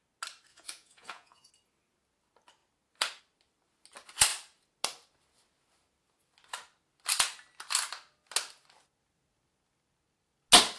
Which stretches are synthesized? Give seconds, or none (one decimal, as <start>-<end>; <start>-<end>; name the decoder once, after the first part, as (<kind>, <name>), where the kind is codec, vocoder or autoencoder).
0.5-1.5 (vocoder, Vocos)